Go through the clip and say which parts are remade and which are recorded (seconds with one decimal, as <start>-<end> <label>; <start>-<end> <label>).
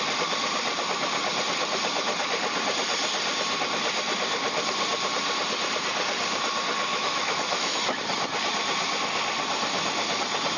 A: 0.0-6.9 recorded; 6.9-7.8 remade; 7.8-10.6 recorded